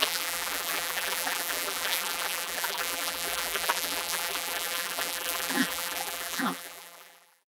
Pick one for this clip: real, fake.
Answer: fake